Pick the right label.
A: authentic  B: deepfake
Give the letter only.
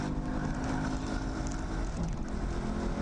A